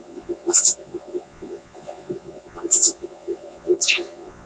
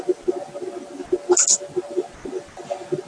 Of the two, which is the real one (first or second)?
second